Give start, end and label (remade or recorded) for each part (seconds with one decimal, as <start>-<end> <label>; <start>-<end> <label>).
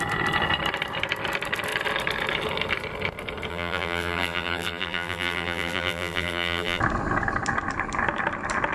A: 0.0-3.5 recorded; 3.5-6.8 remade; 6.8-8.7 recorded